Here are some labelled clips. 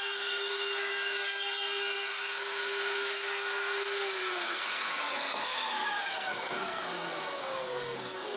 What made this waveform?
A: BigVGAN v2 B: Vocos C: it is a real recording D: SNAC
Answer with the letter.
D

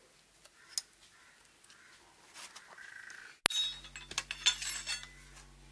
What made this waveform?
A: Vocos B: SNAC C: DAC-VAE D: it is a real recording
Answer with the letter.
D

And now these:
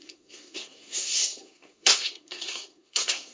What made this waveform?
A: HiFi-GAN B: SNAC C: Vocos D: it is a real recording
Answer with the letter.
B